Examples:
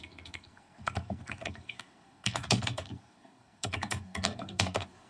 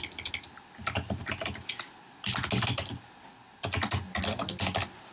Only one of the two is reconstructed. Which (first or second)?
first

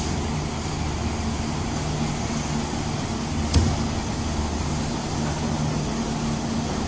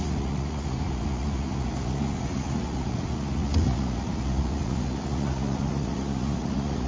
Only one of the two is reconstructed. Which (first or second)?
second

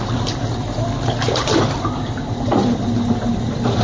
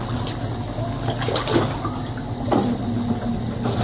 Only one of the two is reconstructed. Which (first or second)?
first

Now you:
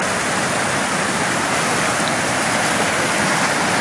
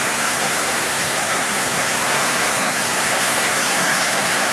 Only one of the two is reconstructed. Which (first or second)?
second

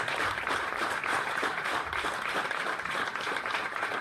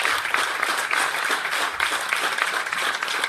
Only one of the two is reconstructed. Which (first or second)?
first